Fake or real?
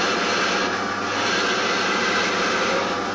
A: real